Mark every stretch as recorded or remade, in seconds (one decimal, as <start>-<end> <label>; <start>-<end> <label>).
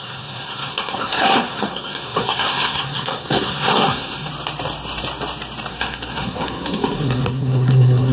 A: 0.0-4.3 remade; 4.3-5.7 recorded; 5.7-8.1 remade